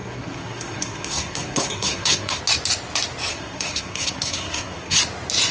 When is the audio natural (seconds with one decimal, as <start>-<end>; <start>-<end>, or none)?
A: 2.4-3.3; 5.0-5.5